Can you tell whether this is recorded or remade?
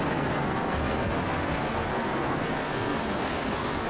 remade